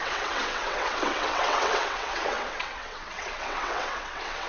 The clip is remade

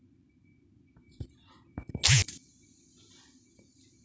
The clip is recorded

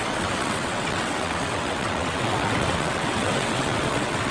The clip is remade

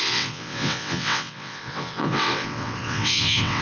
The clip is remade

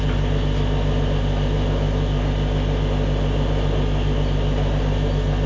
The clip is recorded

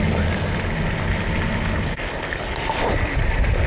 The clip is recorded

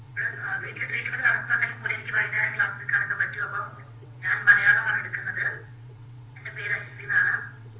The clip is remade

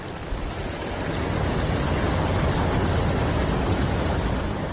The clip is recorded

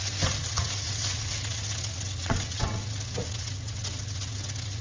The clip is remade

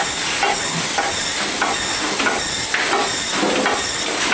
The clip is recorded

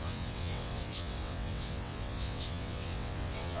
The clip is remade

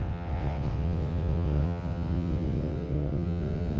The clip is remade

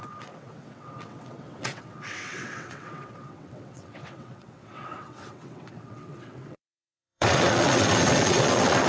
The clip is remade